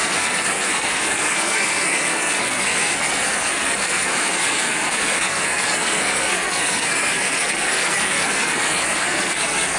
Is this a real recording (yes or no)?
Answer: no